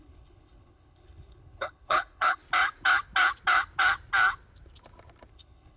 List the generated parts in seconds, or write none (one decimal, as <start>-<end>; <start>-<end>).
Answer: 0.0-2.4; 5.3-5.8